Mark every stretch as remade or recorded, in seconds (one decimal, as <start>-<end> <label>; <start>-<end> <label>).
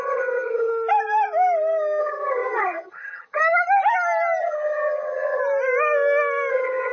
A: 0.0-0.7 remade; 0.7-2.0 recorded; 2.0-3.4 remade; 3.4-4.4 recorded; 4.4-5.4 remade; 5.4-6.5 recorded; 6.5-6.9 remade